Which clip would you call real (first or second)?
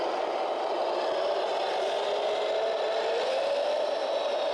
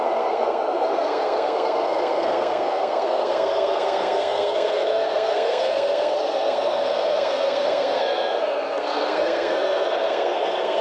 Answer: first